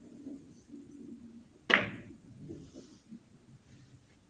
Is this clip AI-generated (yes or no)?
no